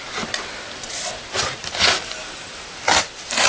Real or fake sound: real